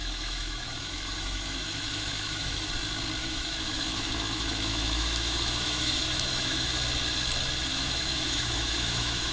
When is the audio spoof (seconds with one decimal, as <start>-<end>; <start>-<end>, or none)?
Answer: 0.0-2.7; 3.2-6.7; 7.7-9.3